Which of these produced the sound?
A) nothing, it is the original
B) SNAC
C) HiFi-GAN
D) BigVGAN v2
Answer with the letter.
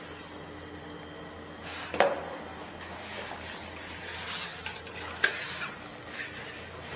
A